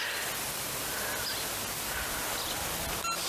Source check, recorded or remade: recorded